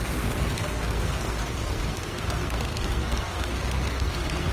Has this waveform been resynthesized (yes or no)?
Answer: yes